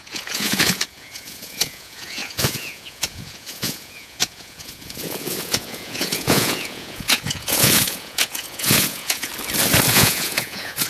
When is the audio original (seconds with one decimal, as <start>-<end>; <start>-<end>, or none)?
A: 9.3-9.9